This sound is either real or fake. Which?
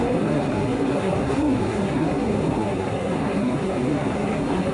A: fake